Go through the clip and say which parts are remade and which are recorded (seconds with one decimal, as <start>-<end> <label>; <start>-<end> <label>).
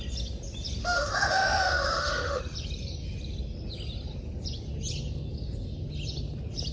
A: 0.0-0.8 recorded; 0.8-2.4 remade; 2.4-6.7 recorded